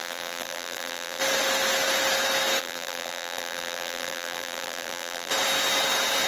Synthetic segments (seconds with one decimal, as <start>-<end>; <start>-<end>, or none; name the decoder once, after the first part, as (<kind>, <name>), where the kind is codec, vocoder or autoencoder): 0.0-1.2 (vocoder, BigVGAN v2); 2.6-5.3